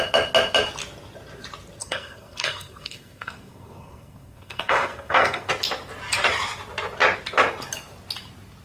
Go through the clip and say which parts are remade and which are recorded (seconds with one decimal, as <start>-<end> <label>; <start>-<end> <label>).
0.0-1.8 recorded; 1.8-5.5 remade; 5.5-8.6 recorded